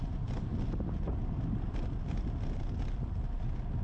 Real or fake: real